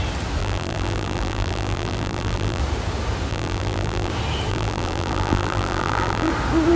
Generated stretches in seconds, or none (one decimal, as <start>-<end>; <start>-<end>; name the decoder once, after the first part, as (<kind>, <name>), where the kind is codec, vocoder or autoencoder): 0.4-2.6 (vocoder, BigVGAN v2); 3.3-4.1; 4.5-6.3